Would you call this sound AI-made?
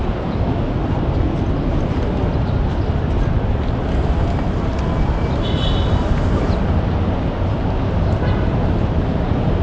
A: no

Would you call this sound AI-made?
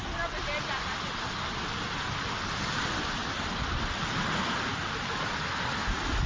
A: no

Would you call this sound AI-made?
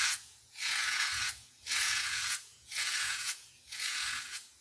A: yes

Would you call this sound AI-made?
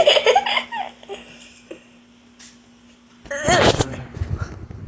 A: no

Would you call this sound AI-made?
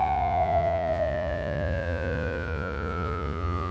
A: yes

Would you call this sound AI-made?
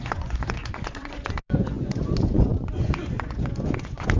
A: yes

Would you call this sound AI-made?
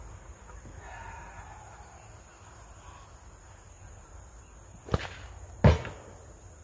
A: no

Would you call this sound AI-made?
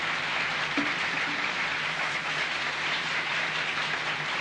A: no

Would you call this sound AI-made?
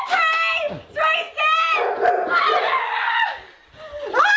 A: no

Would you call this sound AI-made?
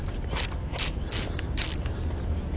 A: no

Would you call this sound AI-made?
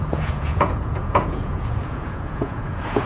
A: yes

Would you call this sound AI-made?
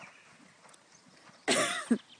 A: no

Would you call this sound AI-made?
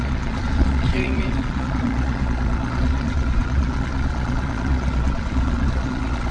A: yes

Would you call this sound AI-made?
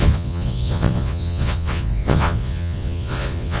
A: yes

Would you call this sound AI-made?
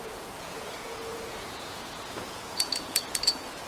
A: yes